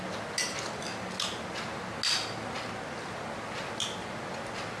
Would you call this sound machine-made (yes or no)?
no